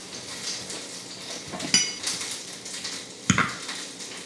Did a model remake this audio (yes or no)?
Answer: no